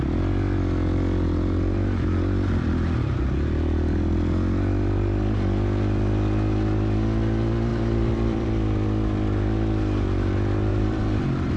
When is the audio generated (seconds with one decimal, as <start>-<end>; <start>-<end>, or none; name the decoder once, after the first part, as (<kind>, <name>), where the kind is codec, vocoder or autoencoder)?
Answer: 7.7-8.5 (vocoder, BigVGAN v2); 10.7-11.6